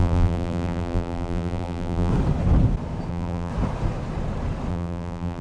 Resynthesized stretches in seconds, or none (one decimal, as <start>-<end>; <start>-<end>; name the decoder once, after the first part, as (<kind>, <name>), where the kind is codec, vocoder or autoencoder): 0.0-2.1 (vocoder, BigVGAN v2); 3.1-3.5; 4.7-5.4